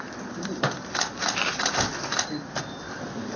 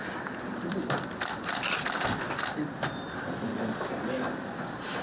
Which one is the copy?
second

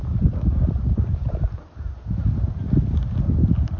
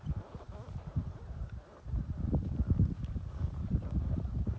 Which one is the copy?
second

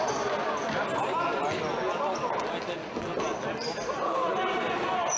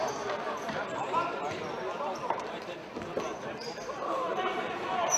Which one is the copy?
second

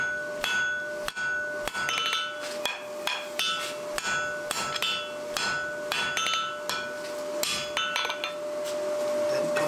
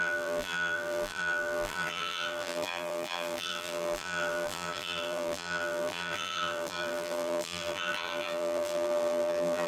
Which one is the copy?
second